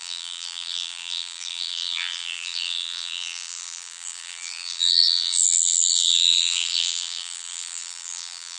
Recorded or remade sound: remade